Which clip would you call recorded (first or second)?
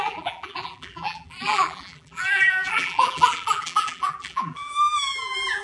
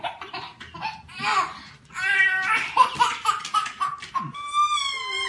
second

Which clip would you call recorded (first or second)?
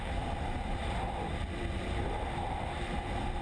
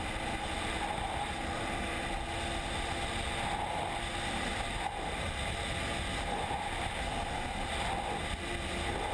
second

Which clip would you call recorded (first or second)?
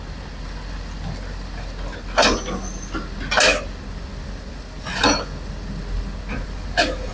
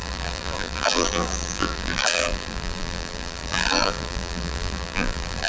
first